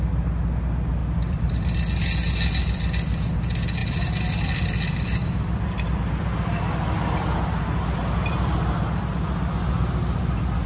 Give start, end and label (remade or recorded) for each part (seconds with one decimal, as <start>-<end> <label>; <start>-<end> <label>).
0.0-1.0 recorded; 1.0-1.5 remade; 1.5-2.6 recorded; 2.6-3.3 remade; 3.3-3.8 recorded; 3.8-6.0 remade; 6.0-10.7 recorded